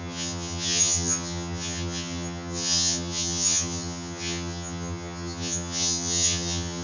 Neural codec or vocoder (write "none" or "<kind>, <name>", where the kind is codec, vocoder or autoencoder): vocoder, HiFi-GAN